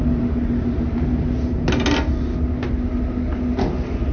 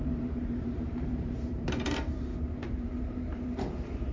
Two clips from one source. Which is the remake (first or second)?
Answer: second